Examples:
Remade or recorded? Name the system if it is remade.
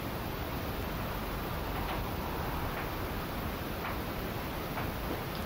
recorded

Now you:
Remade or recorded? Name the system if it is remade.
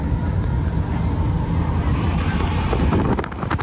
recorded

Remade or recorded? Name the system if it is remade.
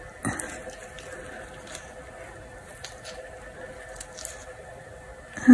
recorded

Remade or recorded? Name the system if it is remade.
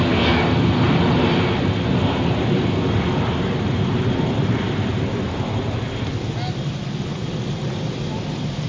recorded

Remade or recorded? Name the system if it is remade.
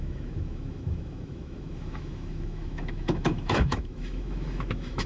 remade, autoencoder, DAC-VAE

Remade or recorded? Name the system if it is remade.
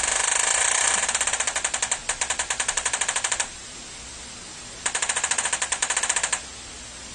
recorded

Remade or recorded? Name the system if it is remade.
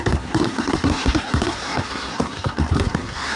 remade, codec, SNAC